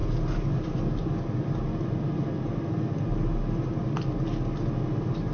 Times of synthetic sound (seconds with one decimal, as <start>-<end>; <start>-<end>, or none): none